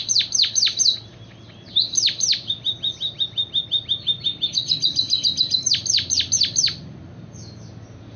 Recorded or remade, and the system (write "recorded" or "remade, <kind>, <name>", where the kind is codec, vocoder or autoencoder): recorded